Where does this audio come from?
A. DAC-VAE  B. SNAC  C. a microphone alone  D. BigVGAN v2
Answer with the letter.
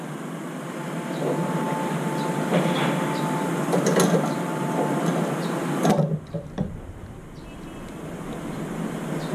C